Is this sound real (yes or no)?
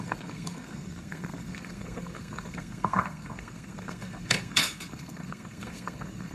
no